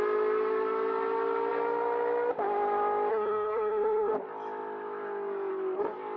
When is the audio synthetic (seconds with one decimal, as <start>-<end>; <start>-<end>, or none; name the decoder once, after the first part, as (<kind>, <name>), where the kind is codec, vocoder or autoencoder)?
3.1-4.1 (codec, SNAC)